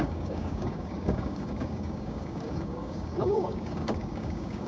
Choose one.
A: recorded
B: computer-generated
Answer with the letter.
B